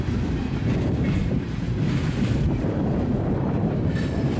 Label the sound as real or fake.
fake